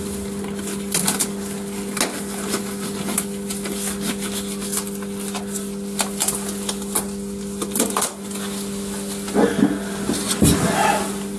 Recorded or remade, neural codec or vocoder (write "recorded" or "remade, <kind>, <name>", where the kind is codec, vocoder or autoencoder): recorded